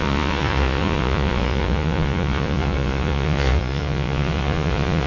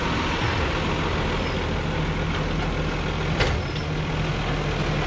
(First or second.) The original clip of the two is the second